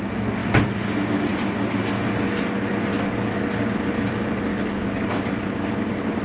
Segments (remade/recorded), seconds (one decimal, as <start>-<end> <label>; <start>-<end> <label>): 0.0-4.5 recorded; 4.5-5.3 remade; 5.3-6.2 recorded

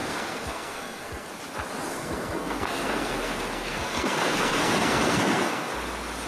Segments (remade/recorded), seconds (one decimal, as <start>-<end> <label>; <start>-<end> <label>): 0.0-1.3 remade; 1.3-1.9 recorded; 1.9-5.7 remade; 5.7-6.3 recorded

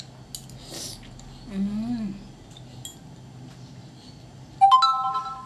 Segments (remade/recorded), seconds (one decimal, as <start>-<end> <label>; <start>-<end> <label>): 0.0-5.5 recorded

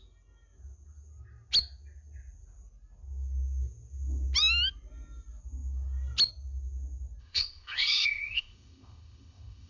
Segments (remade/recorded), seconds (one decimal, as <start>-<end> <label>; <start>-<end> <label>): 0.0-7.2 recorded; 7.2-9.7 remade

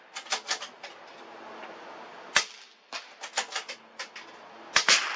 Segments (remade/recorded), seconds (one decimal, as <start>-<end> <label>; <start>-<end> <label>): 0.0-5.2 recorded

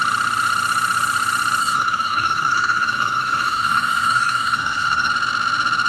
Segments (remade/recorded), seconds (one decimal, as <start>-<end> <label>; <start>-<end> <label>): 0.0-1.6 recorded; 1.6-5.1 remade; 5.1-5.9 recorded

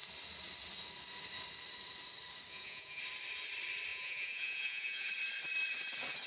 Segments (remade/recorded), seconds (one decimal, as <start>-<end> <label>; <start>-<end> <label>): 0.0-2.5 recorded; 2.5-3.0 remade; 3.0-3.9 recorded; 3.9-5.1 remade; 5.1-6.3 recorded

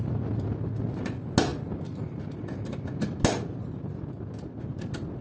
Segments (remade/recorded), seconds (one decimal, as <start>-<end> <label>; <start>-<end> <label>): 0.0-5.2 recorded